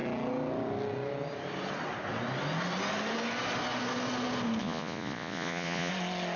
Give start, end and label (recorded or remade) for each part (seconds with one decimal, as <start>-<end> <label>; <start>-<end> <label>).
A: 0.0-4.6 recorded; 4.6-5.9 remade; 5.9-6.4 recorded